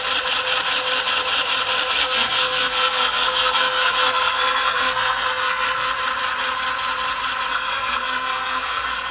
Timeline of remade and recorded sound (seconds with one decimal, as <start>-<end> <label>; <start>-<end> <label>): 0.0-2.0 recorded; 2.0-5.9 remade; 5.9-7.5 recorded; 7.5-9.1 remade